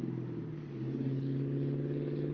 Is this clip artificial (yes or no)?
yes